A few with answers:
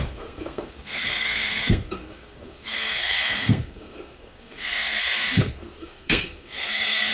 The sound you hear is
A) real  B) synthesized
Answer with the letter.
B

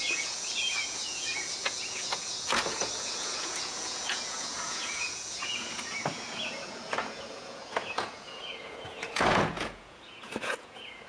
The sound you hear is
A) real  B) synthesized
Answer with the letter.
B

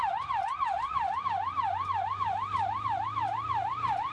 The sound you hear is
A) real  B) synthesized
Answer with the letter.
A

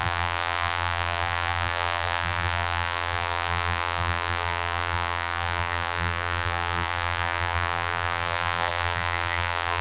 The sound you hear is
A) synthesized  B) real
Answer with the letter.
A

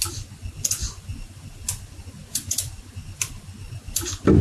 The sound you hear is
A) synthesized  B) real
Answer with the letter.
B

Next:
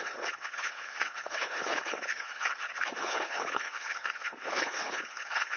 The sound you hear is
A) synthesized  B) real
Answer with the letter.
A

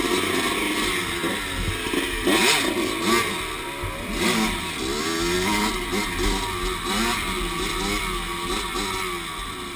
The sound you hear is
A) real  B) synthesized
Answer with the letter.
A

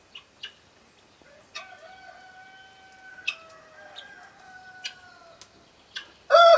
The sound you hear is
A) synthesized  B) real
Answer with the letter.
B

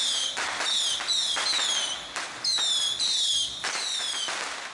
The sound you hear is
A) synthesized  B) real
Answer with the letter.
B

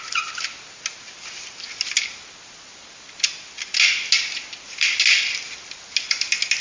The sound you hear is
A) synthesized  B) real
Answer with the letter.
B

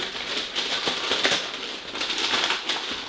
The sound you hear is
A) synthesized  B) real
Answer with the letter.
A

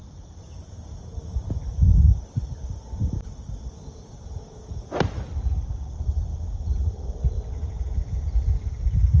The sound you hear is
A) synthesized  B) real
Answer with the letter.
B